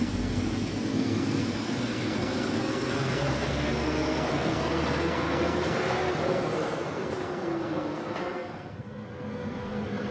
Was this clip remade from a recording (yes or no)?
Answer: yes